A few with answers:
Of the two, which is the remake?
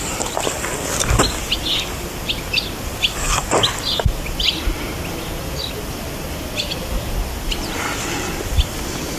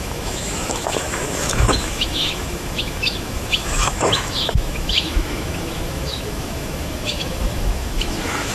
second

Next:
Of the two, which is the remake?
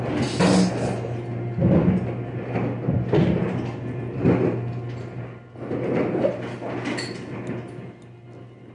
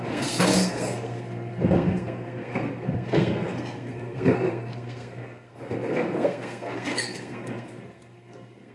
second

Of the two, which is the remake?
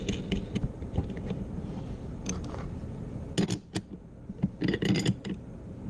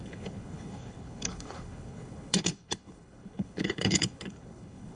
second